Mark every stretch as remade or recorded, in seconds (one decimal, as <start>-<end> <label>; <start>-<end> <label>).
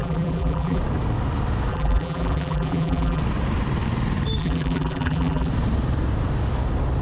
0.0-0.8 remade; 0.8-1.7 recorded; 1.7-3.2 remade; 3.2-4.4 recorded; 4.4-5.5 remade; 5.5-7.0 recorded